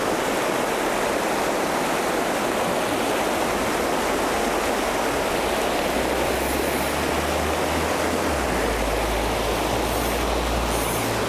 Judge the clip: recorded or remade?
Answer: recorded